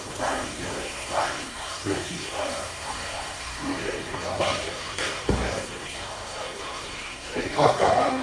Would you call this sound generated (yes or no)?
yes